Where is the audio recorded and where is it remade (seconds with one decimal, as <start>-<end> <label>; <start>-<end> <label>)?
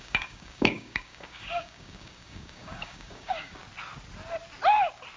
0.0-3.6 remade; 3.6-5.2 recorded